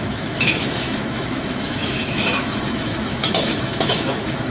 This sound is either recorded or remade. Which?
remade